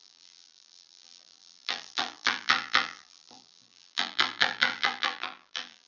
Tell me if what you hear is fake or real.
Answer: fake